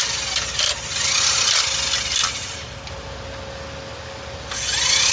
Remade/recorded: recorded